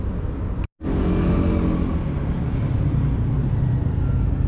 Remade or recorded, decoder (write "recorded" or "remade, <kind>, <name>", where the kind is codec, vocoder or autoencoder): recorded